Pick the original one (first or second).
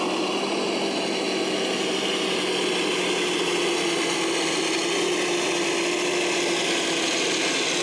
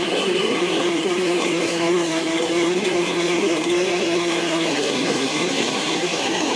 first